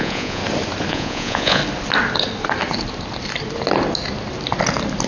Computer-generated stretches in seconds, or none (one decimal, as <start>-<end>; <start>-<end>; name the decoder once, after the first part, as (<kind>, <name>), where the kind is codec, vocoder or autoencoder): 0.0-0.4 (vocoder, Vocos); 0.9-1.6